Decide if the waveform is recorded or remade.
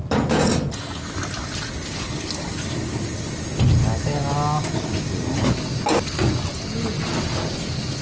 recorded